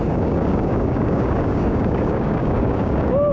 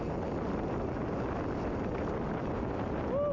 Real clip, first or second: second